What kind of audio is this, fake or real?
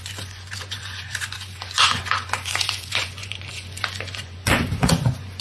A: fake